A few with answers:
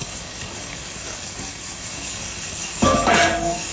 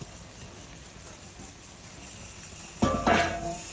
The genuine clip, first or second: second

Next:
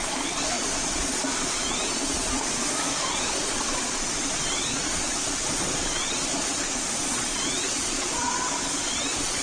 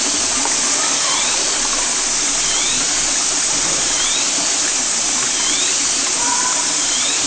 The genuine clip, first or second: second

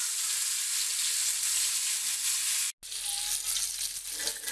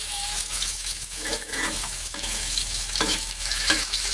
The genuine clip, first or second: first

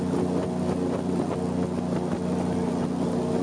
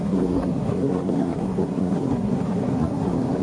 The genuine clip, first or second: first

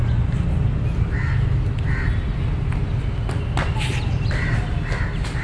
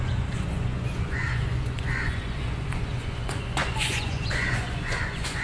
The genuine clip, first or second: first